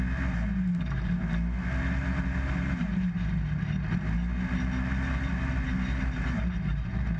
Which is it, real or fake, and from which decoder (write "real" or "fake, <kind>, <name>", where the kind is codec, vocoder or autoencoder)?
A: real